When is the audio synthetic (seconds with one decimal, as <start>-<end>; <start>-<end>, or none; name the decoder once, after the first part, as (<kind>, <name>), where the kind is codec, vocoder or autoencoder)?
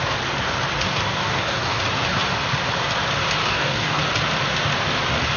1.1-1.8 (codec, DAC); 3.4-4.0